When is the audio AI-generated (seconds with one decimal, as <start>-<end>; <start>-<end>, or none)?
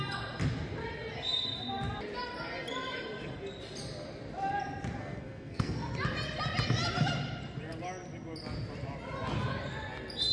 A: 5.0-5.9